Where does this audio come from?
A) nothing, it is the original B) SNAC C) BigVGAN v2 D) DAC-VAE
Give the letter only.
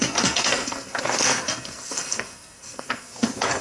B